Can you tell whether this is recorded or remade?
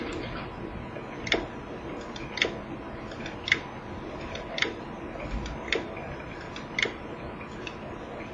recorded